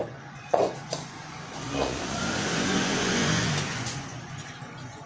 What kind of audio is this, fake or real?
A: fake